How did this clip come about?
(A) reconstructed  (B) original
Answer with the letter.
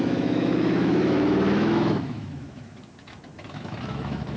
A